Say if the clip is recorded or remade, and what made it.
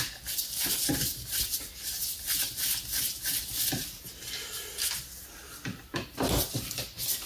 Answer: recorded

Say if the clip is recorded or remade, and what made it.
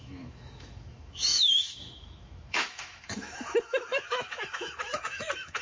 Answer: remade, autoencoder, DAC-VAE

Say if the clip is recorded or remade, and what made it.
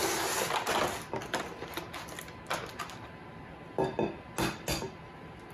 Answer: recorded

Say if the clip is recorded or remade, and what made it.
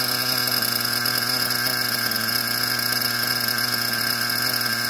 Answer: recorded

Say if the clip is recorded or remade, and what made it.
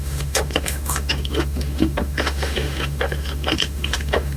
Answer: remade, autoencoder, DAC-VAE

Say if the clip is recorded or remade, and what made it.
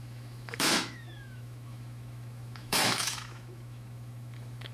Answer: remade, autoencoder, DAC-VAE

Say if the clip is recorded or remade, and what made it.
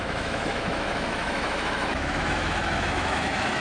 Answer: remade, autoencoder, DAC-VAE